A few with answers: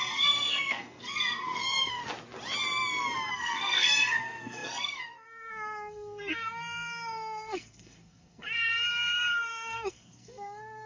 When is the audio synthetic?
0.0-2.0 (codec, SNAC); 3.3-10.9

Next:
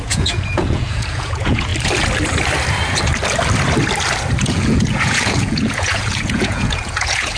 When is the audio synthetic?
0.0-1.7 (vocoder, Vocos); 4.4-7.4

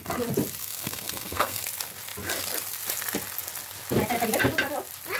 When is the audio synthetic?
0.6-1.6 (codec, SNAC)